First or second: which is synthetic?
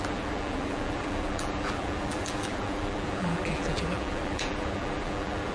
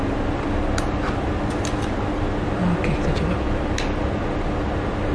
first